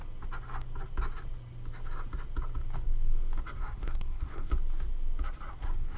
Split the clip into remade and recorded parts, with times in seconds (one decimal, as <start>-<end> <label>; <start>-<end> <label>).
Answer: 0.0-3.6 recorded; 3.6-4.5 remade; 4.5-5.5 recorded; 5.5-6.0 remade

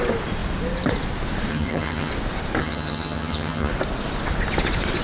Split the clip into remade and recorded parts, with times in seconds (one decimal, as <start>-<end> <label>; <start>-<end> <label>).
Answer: 0.0-1.5 recorded; 1.5-2.1 remade; 2.1-2.6 recorded; 2.6-3.7 remade; 3.7-5.0 recorded

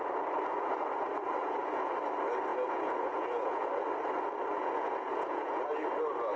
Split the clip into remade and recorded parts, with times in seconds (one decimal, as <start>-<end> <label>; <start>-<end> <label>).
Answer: 0.0-1.3 recorded; 1.3-1.9 remade; 1.9-2.5 recorded; 2.5-3.7 remade; 3.7-4.6 recorded; 4.6-5.6 remade; 5.6-6.4 recorded

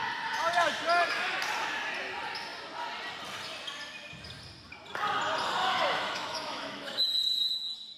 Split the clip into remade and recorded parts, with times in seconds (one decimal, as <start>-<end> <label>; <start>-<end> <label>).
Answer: 0.0-5.6 recorded; 5.6-7.0 remade; 7.0-8.0 recorded

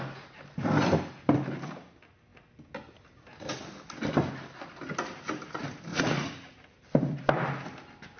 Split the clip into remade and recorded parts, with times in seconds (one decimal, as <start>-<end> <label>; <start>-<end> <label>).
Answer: 0.0-5.9 recorded; 5.9-6.5 remade; 6.5-8.2 recorded

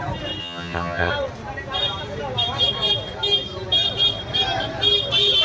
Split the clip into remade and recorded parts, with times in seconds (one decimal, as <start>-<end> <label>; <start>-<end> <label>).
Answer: 0.0-0.4 recorded; 0.4-1.1 remade; 1.1-5.4 recorded

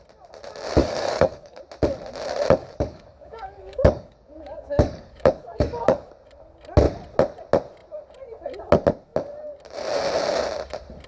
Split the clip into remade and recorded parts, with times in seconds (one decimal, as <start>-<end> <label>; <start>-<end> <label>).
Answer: 0.0-0.8 recorded; 0.8-1.6 remade; 1.6-2.6 recorded; 2.6-6.1 remade; 6.1-11.1 recorded

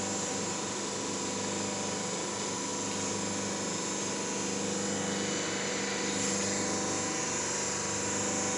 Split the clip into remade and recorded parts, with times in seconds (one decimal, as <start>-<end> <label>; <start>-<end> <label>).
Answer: 0.0-8.6 recorded